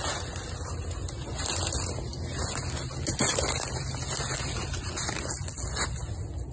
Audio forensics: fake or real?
real